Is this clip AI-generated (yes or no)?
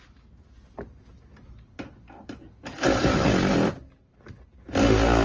no